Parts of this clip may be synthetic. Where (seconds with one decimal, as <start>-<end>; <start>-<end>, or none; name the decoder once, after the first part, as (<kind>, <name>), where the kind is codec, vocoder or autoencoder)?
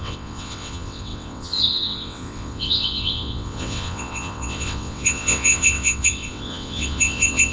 0.0-7.5 (vocoder, WaveNeXt)